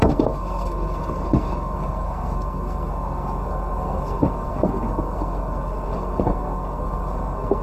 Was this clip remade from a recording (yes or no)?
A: yes